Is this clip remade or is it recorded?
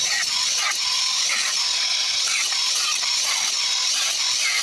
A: recorded